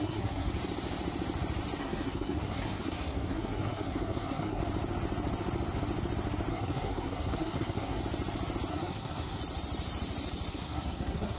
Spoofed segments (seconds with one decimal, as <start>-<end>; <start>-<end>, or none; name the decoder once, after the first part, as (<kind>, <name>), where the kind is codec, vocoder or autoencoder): 0.0-0.5 (codec, SNAC); 1.8-4.6; 6.5-8.0; 8.7-9.4; 10.5-11.4